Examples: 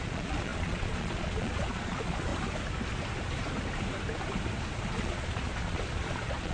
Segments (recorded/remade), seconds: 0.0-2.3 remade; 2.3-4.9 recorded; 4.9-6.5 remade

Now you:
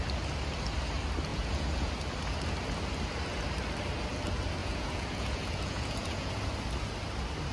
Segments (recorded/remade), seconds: 0.0-1.3 recorded; 1.3-1.9 remade; 1.9-4.6 recorded; 4.6-6.3 remade; 6.3-7.5 recorded

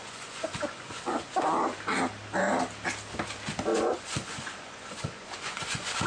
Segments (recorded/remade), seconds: 0.0-1.3 remade; 1.3-3.7 recorded; 3.7-6.1 remade

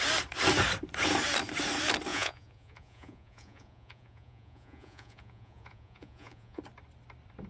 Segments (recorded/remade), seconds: 0.0-2.1 recorded; 2.1-6.6 remade; 6.6-7.5 recorded

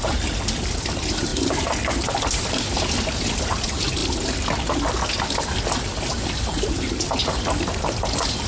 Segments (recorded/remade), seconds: 0.0-8.5 recorded